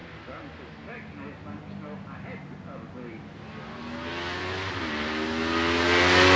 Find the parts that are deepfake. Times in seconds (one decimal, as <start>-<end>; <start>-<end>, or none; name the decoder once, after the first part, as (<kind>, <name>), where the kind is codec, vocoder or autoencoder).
none